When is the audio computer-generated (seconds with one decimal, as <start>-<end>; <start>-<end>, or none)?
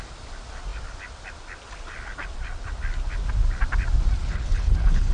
4.2-5.1